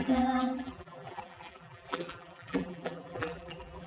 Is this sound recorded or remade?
remade